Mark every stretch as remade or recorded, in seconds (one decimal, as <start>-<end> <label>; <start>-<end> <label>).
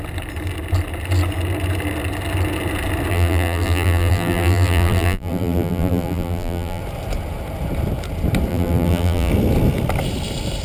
0.0-3.1 recorded; 3.1-6.8 remade; 6.8-8.5 recorded; 8.5-9.3 remade; 9.3-10.6 recorded